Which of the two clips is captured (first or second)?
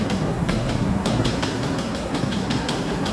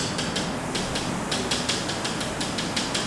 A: second